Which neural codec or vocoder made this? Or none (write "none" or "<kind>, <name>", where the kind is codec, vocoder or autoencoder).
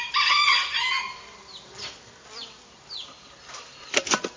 none